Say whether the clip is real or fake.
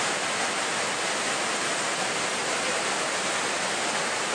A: real